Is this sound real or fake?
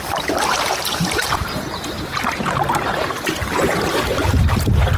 fake